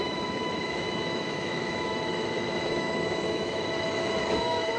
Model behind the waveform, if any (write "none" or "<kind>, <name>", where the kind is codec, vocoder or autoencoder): autoencoder, DAC-VAE